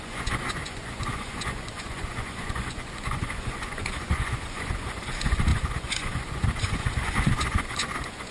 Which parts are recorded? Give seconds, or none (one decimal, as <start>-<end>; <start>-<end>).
none